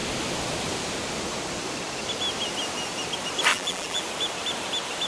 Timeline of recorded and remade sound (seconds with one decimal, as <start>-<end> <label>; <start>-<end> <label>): 0.0-3.5 recorded; 3.5-4.0 remade; 4.0-5.1 recorded